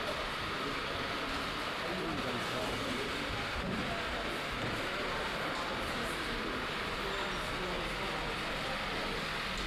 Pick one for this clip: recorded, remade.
recorded